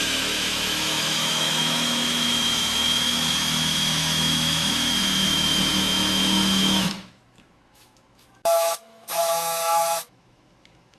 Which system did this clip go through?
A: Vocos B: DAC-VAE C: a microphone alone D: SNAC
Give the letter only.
B